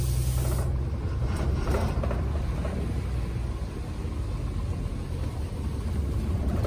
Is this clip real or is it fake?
real